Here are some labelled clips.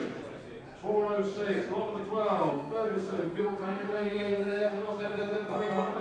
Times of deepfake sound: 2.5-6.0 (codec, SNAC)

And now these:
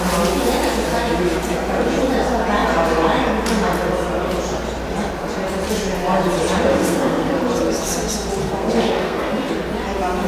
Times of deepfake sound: 6.7-7.3 (codec, SNAC); 8.4-9.5

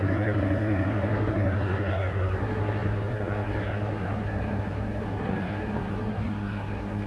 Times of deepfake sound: 0.0-7.1 (codec, SNAC)

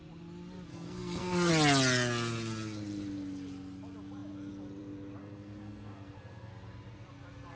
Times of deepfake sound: 0.7-1.5 (codec, SNAC); 5.2-6.5